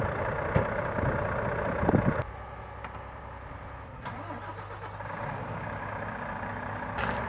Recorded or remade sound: recorded